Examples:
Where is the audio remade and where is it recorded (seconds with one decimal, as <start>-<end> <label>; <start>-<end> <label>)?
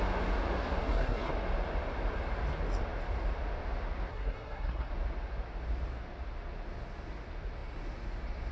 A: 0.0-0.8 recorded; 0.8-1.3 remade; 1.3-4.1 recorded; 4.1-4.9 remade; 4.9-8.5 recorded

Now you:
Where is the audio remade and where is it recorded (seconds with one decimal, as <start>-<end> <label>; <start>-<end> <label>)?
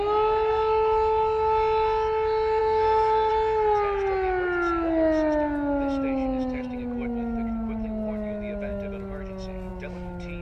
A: 0.0-2.6 recorded; 2.6-3.3 remade; 3.3-10.4 recorded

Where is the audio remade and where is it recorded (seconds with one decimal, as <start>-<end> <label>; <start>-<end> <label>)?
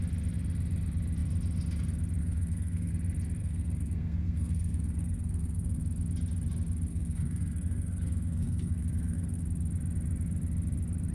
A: 0.0-2.2 recorded; 2.2-2.9 remade; 2.9-3.4 recorded; 3.4-5.8 remade; 5.8-6.9 recorded; 6.9-9.4 remade; 9.4-11.1 recorded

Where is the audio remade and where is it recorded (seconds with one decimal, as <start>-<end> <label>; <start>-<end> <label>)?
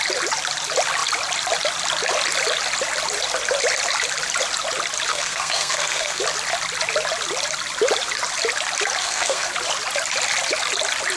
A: 0.0-5.1 recorded; 5.1-6.2 remade; 6.2-9.0 recorded; 9.0-9.5 remade; 9.5-11.2 recorded